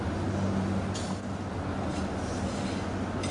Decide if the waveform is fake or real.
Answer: real